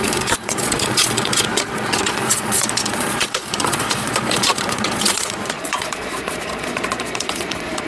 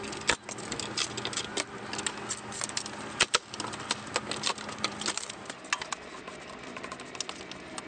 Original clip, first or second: second